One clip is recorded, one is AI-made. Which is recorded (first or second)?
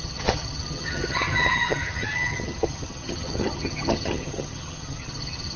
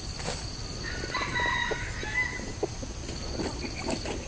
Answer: second